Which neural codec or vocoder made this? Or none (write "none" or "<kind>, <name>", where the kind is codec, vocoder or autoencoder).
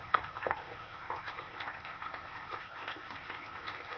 codec, ZipCodec